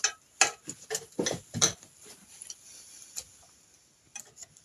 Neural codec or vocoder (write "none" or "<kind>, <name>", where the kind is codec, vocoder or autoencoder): none